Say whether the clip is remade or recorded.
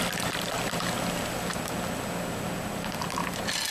recorded